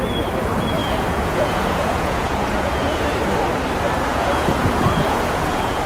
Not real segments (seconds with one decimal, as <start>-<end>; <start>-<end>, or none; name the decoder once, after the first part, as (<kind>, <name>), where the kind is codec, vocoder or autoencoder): 0.8-3.0 (vocoder, Vocos); 4.1-5.9